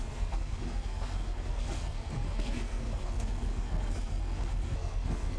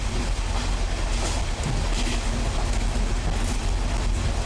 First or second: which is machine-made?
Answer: first